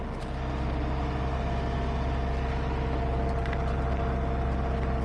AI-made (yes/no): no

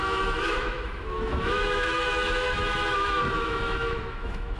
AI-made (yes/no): yes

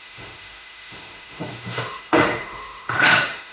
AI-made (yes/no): yes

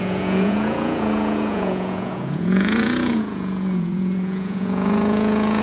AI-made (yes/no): yes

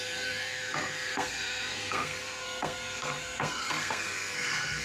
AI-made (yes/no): yes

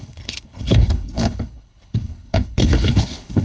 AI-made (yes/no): yes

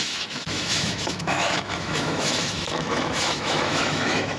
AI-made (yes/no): yes